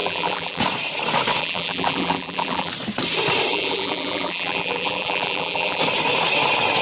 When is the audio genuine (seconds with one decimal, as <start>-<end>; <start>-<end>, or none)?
0.6-1.4; 2.7-3.5; 5.8-6.8